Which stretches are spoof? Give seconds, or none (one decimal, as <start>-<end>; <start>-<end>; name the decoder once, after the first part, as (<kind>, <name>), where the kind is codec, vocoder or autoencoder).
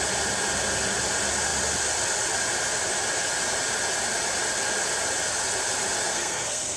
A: 6.1-6.8 (codec, SNAC)